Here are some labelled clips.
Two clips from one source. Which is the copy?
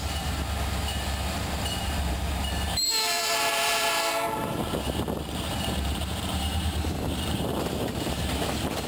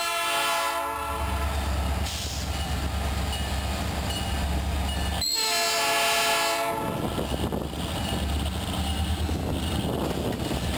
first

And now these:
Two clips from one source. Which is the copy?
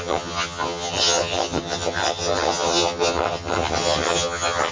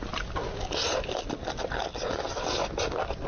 first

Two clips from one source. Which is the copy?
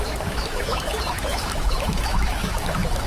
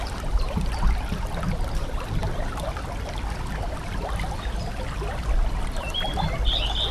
first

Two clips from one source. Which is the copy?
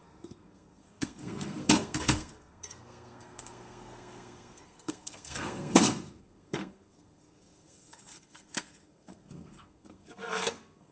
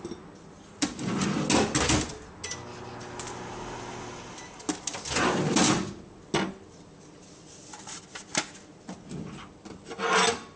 first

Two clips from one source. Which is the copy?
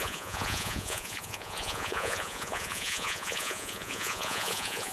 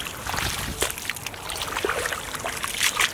first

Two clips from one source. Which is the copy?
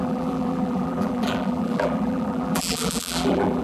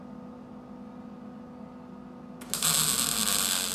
first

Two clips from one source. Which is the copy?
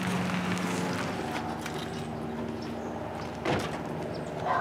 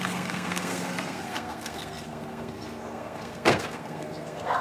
second